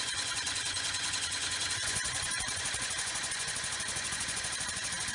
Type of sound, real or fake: fake